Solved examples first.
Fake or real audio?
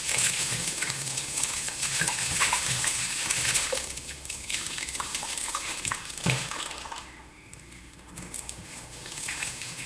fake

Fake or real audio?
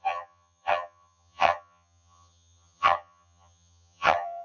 fake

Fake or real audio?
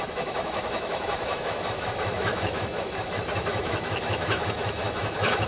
fake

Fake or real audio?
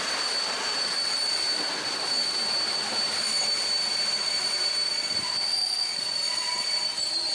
fake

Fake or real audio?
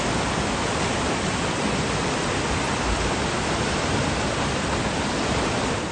real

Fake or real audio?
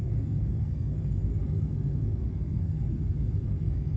fake